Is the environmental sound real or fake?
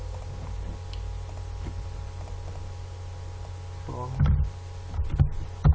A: real